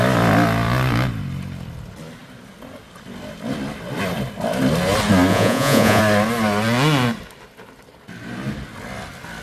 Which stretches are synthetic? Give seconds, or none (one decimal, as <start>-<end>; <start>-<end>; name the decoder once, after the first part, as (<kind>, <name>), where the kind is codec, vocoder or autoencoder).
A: 5.3-6.0 (vocoder, Vocos)